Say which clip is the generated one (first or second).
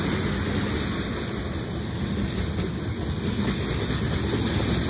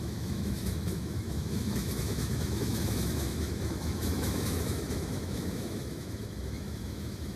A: second